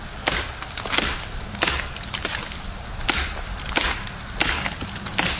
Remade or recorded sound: recorded